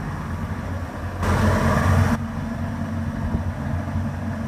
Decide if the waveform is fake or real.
real